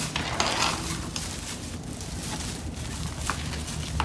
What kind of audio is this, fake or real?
real